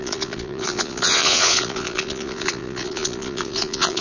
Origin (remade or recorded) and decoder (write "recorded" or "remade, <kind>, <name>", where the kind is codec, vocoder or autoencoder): remade, vocoder, Vocos